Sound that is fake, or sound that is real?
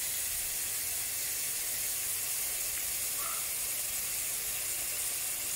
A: real